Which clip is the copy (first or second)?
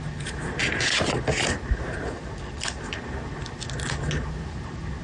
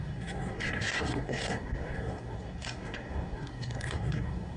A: second